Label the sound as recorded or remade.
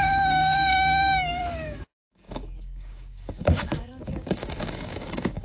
remade